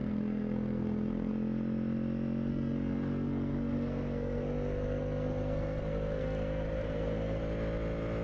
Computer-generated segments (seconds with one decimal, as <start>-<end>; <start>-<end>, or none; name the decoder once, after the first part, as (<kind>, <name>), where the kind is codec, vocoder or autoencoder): 0.0-1.3 (codec, SNAC); 2.5-7.4